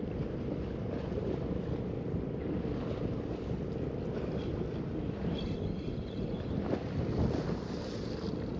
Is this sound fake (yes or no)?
no